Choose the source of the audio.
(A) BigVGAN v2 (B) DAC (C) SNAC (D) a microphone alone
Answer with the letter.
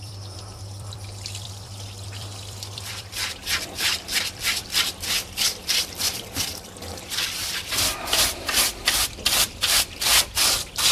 A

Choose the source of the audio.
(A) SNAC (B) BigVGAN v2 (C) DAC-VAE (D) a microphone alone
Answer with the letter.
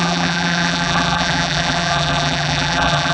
B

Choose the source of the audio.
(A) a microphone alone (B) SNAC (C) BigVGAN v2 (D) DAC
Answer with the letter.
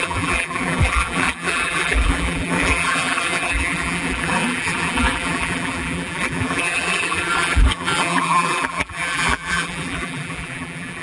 C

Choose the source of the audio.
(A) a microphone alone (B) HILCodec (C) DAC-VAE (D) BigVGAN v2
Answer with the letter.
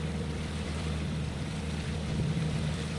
D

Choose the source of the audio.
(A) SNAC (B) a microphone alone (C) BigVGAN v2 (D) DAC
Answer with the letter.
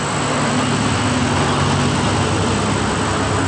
B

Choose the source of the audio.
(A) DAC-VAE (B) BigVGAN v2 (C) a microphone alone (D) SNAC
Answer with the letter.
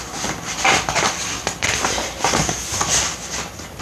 C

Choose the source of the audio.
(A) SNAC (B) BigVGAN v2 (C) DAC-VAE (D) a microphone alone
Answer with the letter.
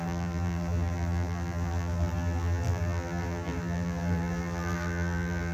B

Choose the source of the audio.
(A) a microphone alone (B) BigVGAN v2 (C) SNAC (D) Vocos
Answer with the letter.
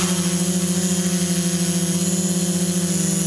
A